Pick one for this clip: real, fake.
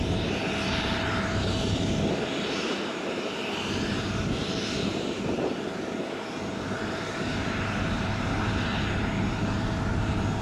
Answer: real